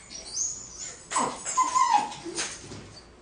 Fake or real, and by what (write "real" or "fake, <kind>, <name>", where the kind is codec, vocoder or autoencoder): real